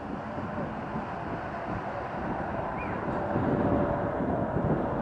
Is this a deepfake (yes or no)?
no